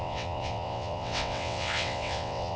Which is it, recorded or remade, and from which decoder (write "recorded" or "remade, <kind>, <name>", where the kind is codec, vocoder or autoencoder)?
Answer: remade, vocoder, WaveNeXt